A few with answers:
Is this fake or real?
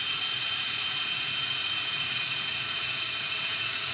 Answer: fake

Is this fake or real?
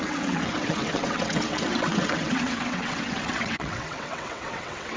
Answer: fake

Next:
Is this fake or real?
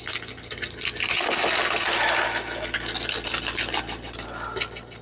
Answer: real